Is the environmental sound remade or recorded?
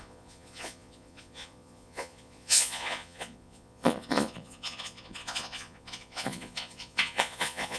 remade